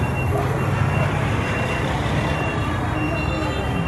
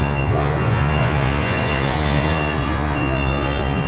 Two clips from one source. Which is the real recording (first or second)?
first